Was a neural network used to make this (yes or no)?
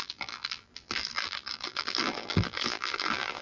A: yes